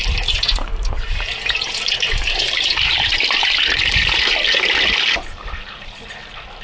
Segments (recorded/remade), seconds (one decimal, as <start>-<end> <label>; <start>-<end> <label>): 0.0-4.0 remade; 4.0-5.4 recorded; 5.4-5.9 remade; 5.9-6.6 recorded